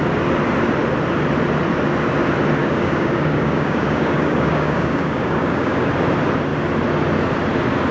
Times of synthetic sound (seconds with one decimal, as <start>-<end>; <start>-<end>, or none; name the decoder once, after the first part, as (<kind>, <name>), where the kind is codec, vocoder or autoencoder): 2.6-5.9 (codec, DAC)